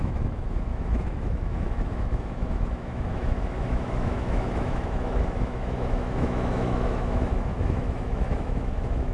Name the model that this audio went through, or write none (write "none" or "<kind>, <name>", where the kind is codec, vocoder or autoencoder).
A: autoencoder, DAC-VAE